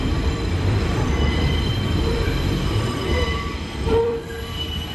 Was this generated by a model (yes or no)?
yes